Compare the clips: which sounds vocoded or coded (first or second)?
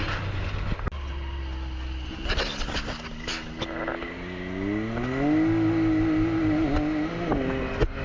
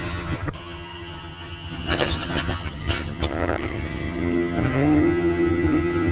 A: second